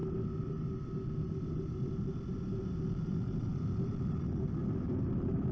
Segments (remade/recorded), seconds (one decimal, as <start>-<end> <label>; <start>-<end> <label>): 0.0-2.8 recorded; 2.8-5.5 remade